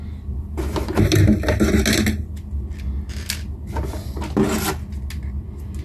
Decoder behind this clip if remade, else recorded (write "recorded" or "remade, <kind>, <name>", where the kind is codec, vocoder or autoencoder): recorded